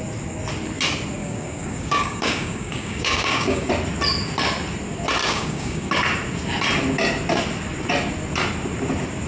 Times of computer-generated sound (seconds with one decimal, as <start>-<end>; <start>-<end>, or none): 1.2-3.7; 5.2-5.9